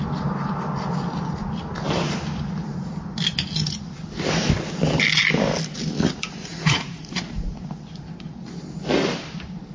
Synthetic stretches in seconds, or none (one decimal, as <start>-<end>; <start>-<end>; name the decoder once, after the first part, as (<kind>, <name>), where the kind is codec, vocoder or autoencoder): 6.4-7.4 (vocoder, Vocos)